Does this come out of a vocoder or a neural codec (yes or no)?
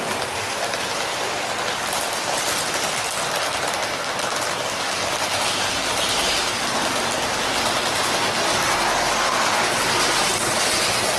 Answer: no